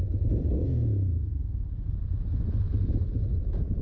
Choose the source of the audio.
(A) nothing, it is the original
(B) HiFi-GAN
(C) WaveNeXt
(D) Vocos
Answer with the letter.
D